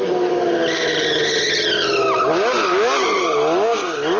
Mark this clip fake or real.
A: real